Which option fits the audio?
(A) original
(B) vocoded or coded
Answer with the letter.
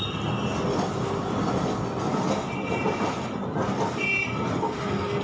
A